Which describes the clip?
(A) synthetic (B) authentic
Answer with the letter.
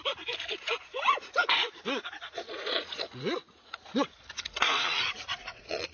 A